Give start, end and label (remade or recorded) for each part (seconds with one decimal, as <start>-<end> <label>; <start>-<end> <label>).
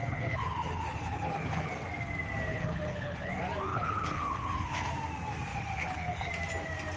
0.0-1.7 remade; 1.7-2.5 recorded; 2.5-3.3 remade; 3.3-3.7 recorded; 3.7-4.9 remade; 4.9-5.5 recorded; 5.5-6.3 remade; 6.3-7.0 recorded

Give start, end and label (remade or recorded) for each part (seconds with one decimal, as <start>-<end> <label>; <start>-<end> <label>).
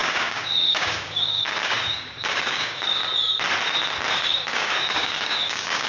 0.0-3.0 remade; 3.0-4.1 recorded; 4.1-5.9 remade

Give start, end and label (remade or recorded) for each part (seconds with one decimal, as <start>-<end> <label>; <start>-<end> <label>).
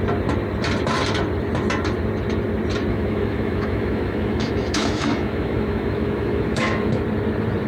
0.0-2.9 recorded; 2.9-7.0 remade; 7.0-7.7 recorded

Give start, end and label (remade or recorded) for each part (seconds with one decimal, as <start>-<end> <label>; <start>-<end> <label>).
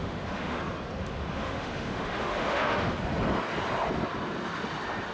0.0-0.6 remade; 0.6-1.0 recorded; 1.0-2.9 remade; 2.9-5.1 recorded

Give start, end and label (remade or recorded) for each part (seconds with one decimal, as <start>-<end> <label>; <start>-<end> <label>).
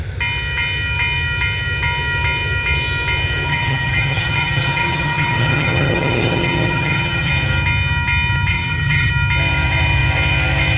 0.0-3.5 recorded; 3.5-7.3 remade; 7.3-8.5 recorded; 8.5-9.1 remade; 9.1-10.8 recorded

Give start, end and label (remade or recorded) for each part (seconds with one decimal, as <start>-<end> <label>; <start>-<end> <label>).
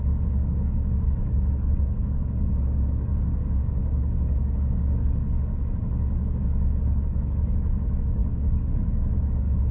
0.0-9.7 remade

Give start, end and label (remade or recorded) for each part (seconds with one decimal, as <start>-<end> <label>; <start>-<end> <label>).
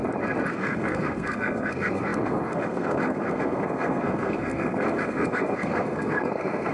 0.0-0.5 recorded; 0.5-6.7 remade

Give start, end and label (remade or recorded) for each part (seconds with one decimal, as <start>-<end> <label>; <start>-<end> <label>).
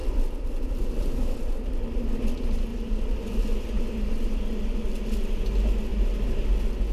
0.0-2.7 recorded; 2.7-3.8 remade; 3.8-5.9 recorded; 5.9-6.5 remade; 6.5-6.9 recorded